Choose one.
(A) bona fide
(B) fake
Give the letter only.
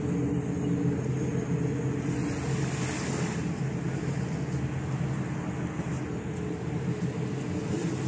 A